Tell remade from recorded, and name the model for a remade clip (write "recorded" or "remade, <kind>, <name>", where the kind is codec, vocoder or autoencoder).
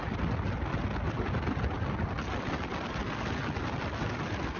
recorded